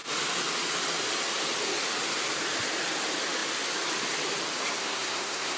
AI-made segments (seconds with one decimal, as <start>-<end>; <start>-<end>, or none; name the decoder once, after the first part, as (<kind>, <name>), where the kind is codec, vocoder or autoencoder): 4.8-5.6 (codec, SNAC)